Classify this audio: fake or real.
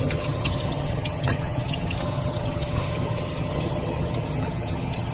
fake